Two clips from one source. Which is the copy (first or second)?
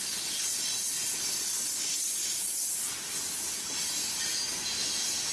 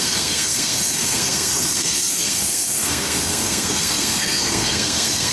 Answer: second